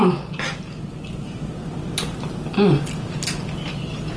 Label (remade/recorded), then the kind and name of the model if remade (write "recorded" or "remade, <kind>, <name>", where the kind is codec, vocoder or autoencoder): recorded